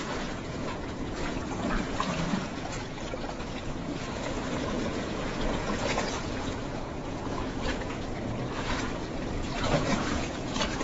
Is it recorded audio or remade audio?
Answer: remade